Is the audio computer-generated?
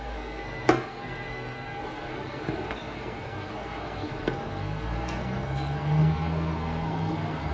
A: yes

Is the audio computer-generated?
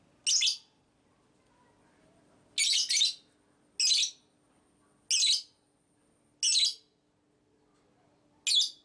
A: no